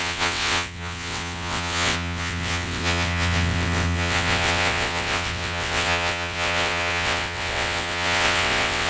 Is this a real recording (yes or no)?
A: no